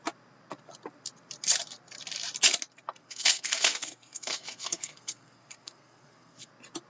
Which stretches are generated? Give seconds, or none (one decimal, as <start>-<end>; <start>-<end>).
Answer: 3.0-6.5